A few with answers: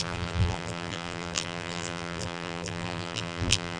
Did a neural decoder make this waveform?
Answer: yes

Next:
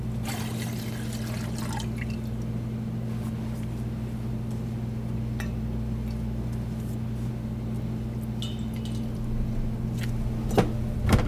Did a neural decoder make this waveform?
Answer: no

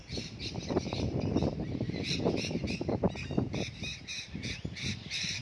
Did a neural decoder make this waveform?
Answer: yes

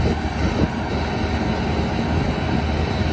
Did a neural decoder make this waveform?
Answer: no